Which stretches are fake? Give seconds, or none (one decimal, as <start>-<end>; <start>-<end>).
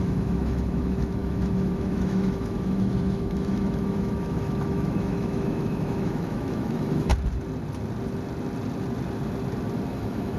0.0-7.1; 9.9-10.4